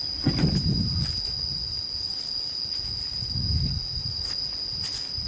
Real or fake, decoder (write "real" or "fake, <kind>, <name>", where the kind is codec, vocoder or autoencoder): real